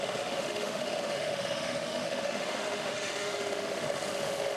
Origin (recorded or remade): remade